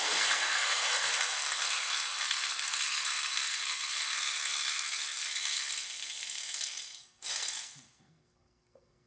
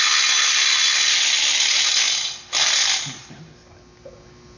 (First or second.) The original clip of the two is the second